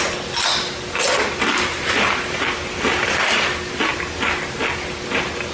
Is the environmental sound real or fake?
real